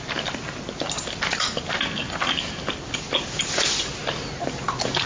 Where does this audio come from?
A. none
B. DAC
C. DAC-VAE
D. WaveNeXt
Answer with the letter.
A